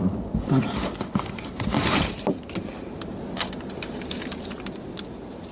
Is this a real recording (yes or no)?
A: yes